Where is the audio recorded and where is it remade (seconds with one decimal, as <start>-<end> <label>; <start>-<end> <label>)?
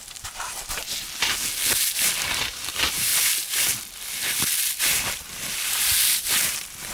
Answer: 0.0-0.8 remade; 0.8-2.3 recorded; 2.3-3.1 remade; 3.1-4.8 recorded; 4.8-6.9 remade